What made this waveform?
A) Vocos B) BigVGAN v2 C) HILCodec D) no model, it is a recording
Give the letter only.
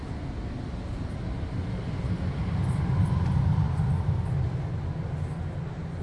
D